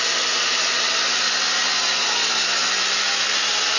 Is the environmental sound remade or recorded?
recorded